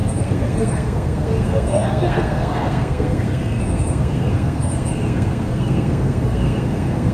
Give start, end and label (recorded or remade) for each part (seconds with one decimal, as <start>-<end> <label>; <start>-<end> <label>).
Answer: 0.0-7.1 remade